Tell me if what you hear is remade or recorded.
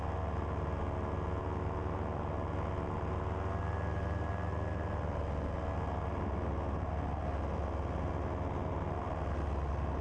recorded